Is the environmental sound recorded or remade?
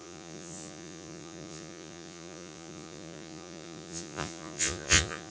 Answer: remade